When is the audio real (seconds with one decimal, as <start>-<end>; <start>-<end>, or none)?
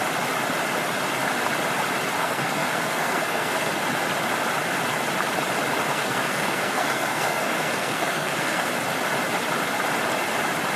0.0-2.2; 3.7-5.9; 8.7-10.8